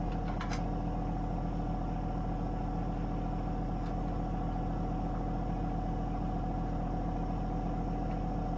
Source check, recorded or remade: recorded